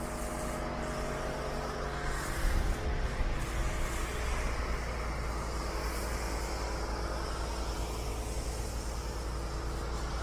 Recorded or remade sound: recorded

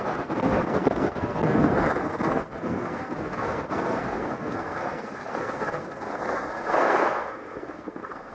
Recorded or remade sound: remade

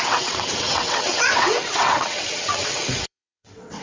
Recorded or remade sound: remade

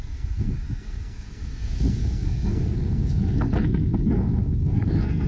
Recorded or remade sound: remade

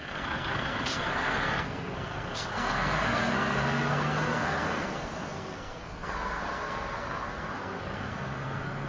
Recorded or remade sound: remade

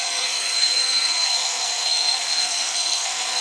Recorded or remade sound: remade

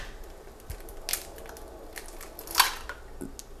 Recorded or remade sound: recorded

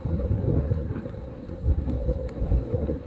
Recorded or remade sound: remade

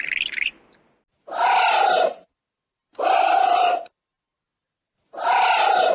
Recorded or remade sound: recorded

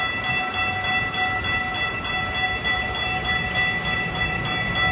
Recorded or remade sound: recorded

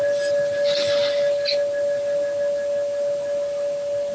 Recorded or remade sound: recorded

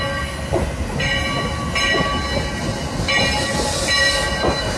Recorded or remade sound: recorded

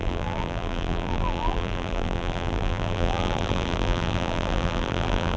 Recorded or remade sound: remade